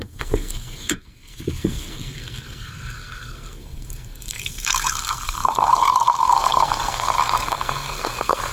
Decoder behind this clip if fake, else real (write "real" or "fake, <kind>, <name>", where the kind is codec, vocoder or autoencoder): fake, codec, SNAC